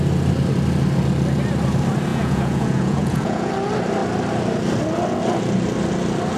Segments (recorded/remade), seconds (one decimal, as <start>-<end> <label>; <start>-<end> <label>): 0.0-2.1 recorded; 2.1-3.5 remade; 3.5-6.4 recorded